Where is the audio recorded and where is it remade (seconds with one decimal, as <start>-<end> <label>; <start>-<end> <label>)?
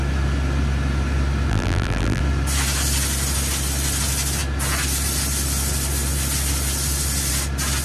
0.0-1.5 recorded; 1.5-2.2 remade; 2.2-7.8 recorded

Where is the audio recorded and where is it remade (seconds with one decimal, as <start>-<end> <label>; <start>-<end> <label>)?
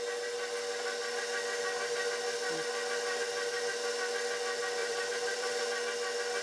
0.0-4.8 recorded; 4.8-5.6 remade; 5.6-6.4 recorded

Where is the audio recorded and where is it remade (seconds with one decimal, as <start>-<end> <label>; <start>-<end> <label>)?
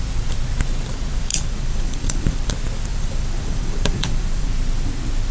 0.0-1.3 recorded; 1.3-2.5 remade; 2.5-2.9 recorded; 2.9-4.5 remade; 4.5-5.3 recorded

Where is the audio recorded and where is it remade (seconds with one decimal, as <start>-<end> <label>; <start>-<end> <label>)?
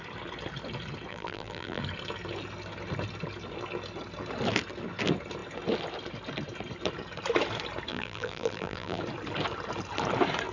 0.0-1.1 recorded; 1.1-1.8 remade; 1.8-7.9 recorded; 7.9-9.0 remade; 9.0-10.5 recorded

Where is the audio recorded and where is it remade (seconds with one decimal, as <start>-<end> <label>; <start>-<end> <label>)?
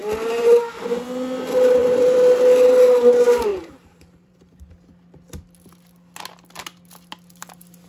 0.0-1.8 recorded; 1.8-2.4 remade; 2.4-3.5 recorded; 3.5-4.7 remade; 4.7-7.9 recorded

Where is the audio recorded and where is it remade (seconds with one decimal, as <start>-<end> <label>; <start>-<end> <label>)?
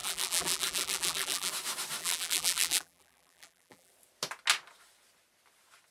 0.0-1.5 remade; 1.5-2.0 recorded; 2.0-3.9 remade; 3.9-5.9 recorded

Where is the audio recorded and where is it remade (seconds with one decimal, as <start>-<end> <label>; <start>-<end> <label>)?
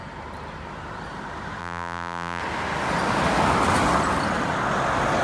0.0-1.6 recorded; 1.6-2.4 remade; 2.4-5.2 recorded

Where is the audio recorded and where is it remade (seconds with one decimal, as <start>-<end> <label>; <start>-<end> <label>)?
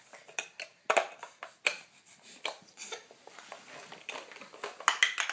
0.0-0.7 recorded; 0.7-1.5 remade; 1.5-5.3 recorded